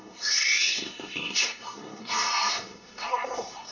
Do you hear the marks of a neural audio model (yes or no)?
yes